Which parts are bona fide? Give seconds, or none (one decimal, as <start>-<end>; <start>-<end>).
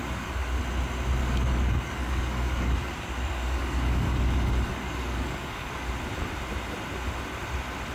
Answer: 0.6-1.2; 5.9-7.9